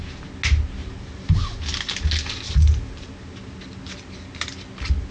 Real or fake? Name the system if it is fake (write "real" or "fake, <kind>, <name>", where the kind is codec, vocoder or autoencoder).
real